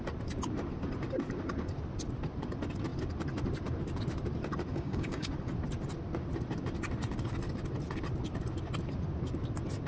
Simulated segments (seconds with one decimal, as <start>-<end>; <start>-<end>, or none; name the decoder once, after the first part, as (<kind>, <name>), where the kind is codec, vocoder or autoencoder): 4.7-5.3 (codec, DAC)